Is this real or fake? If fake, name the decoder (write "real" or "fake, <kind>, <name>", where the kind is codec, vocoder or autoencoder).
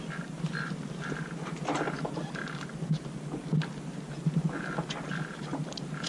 real